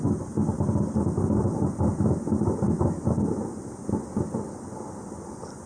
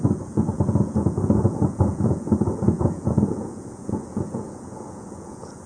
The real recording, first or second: first